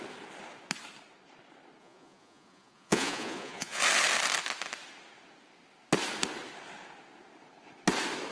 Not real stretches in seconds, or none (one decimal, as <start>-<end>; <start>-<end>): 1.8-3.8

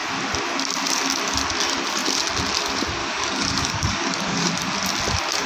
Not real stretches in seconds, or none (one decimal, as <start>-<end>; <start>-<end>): 3.0-4.5

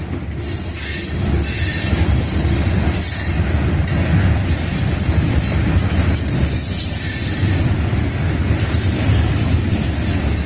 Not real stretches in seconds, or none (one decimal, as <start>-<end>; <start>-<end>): 7.4-8.0

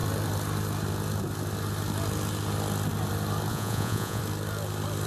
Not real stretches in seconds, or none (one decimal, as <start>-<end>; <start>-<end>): 3.5-4.2